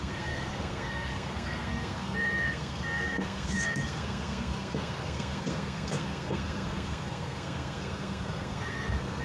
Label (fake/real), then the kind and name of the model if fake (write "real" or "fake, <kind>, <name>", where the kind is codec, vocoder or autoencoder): fake, codec, SNAC